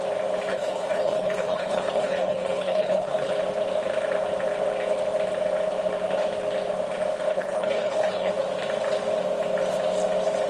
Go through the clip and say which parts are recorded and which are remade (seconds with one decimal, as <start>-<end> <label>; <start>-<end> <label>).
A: 0.0-0.5 recorded; 0.5-3.3 remade; 3.3-7.3 recorded; 7.3-8.3 remade; 8.3-10.5 recorded